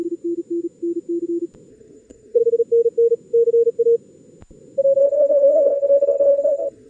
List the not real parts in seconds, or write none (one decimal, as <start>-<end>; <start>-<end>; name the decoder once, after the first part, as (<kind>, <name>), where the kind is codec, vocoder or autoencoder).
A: 1.7-2.4 (codec, SNAC); 5.0-6.9